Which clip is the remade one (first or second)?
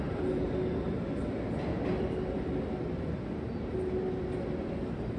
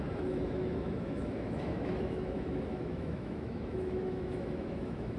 second